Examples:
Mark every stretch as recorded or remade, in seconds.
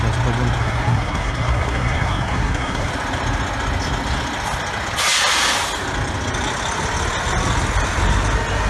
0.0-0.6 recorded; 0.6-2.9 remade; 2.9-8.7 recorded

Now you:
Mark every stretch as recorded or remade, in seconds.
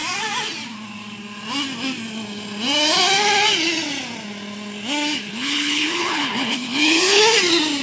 0.0-5.3 recorded; 5.3-7.2 remade; 7.2-7.8 recorded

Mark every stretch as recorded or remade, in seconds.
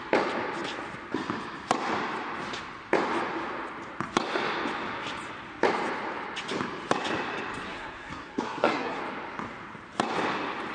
0.0-7.7 recorded; 7.7-9.0 remade; 9.0-10.7 recorded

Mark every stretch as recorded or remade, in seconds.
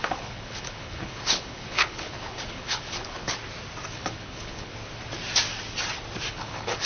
0.0-3.4 remade; 3.4-3.9 recorded; 3.9-4.7 remade; 4.7-6.3 recorded; 6.3-6.9 remade